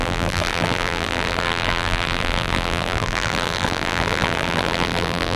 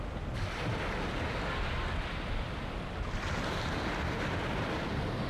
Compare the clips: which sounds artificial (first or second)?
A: first